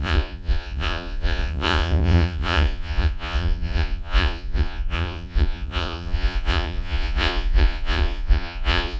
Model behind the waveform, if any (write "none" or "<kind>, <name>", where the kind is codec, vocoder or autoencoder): vocoder, Vocos